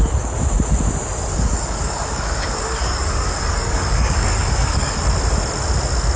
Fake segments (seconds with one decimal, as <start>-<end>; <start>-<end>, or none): 1.3-5.0